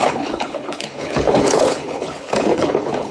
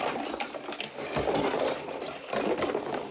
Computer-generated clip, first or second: first